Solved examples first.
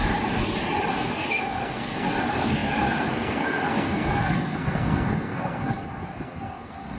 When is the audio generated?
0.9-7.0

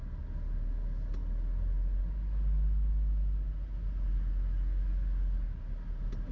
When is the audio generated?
none

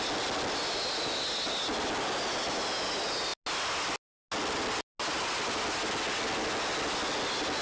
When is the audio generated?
none

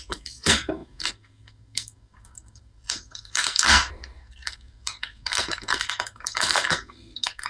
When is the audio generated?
0.0-7.5

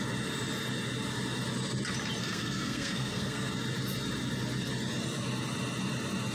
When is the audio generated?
2.2-3.5